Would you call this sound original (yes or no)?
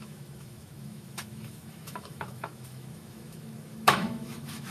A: no